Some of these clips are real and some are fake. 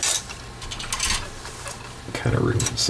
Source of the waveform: real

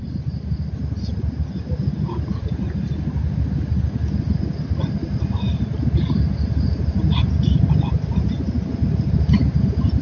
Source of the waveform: real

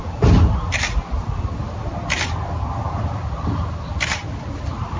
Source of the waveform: real